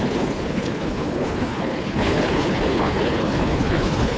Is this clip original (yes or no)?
no